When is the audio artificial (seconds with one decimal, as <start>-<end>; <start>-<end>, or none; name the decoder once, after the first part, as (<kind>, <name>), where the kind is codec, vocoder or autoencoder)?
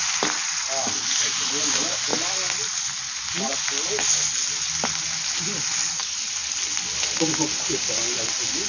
none